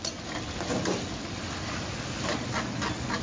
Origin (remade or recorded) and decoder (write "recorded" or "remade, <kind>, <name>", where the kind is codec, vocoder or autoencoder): recorded